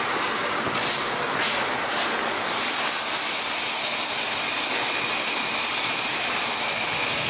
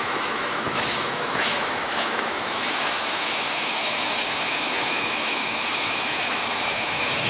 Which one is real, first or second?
first